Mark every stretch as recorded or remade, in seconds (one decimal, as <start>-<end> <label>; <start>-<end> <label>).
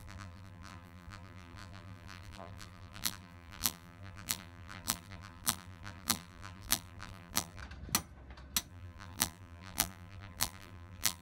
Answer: 0.0-7.6 remade; 7.6-8.7 recorded; 8.7-11.2 remade